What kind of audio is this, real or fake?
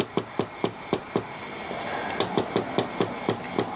real